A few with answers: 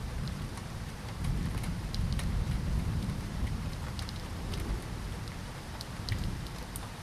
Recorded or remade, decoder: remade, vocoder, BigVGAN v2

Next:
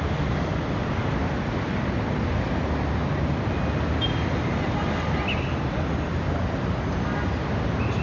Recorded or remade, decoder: recorded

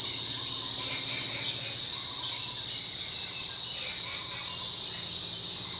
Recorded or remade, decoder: recorded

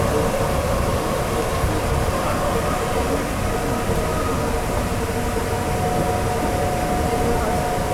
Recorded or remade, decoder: recorded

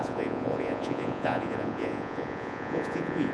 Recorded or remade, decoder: remade, vocoder, Vocos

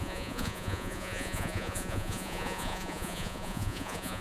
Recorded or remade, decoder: remade, vocoder, Vocos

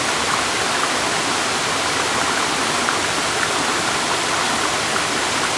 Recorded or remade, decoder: recorded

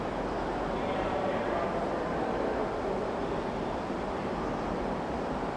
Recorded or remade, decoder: recorded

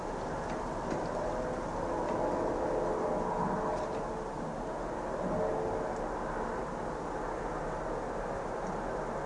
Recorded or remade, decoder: recorded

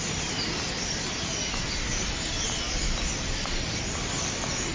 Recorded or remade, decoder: recorded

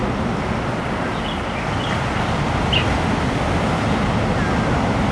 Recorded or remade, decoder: recorded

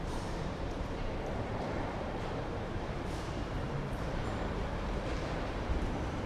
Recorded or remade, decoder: remade, vocoder, BigVGAN v2